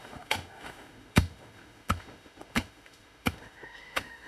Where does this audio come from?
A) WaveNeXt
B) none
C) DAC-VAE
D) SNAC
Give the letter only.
C